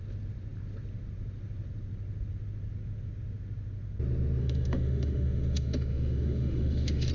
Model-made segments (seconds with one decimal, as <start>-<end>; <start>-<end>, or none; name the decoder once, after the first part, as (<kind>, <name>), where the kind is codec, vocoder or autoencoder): 4.4-7.1 (autoencoder, DAC-VAE)